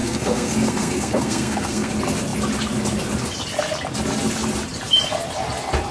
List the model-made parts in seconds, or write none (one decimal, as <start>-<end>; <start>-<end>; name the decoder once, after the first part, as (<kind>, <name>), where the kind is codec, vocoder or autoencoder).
0.0-1.9 (codec, SNAC)